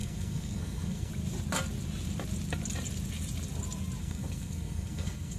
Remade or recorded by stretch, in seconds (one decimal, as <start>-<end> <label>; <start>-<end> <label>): 0.0-1.1 remade; 1.1-4.0 recorded; 4.0-5.4 remade